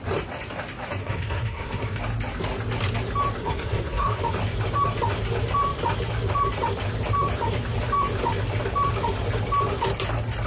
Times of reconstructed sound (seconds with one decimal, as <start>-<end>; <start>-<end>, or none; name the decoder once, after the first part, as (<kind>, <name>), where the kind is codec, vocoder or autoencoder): 1.0-2.0 (codec, SNAC); 3.4-4.2